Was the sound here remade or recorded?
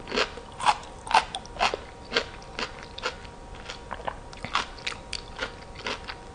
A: recorded